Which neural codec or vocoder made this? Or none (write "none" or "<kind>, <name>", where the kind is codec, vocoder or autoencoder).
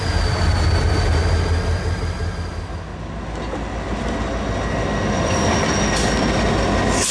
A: none